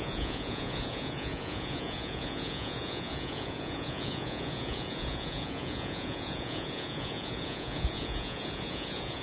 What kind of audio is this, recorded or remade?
remade